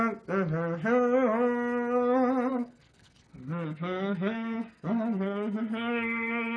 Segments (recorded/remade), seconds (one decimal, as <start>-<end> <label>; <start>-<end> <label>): 0.0-2.5 recorded; 2.5-6.6 remade